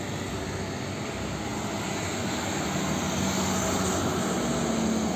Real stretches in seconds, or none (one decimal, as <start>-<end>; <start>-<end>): 0.0-5.2